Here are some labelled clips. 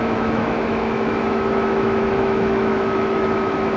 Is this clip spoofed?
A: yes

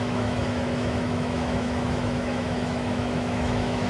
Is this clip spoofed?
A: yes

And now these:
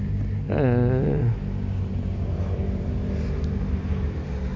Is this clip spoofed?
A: no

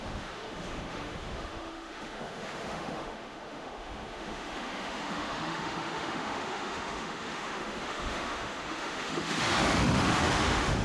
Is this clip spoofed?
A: yes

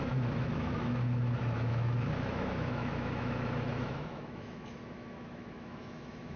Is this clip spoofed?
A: yes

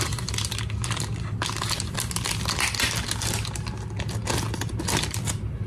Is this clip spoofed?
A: no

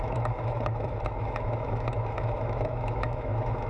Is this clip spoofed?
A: yes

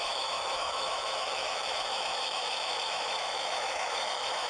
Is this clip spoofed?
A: yes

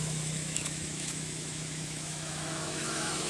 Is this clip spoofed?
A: yes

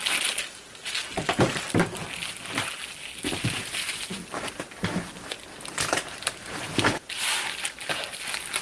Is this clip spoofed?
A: no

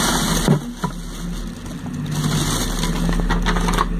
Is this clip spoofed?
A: no